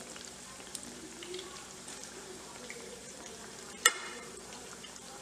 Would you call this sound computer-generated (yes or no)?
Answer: yes